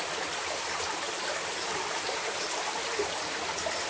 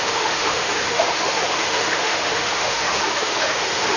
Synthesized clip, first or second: second